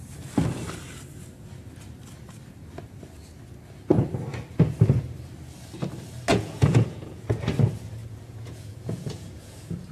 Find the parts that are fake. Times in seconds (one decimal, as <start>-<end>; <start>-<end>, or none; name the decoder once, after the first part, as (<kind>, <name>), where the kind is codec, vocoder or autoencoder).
6.3-7.2 (vocoder, Vocos); 8.0-9.9